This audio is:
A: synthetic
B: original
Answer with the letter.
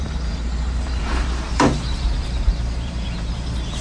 A